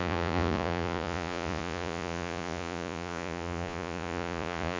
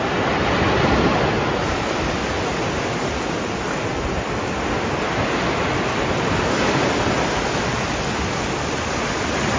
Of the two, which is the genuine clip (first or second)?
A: second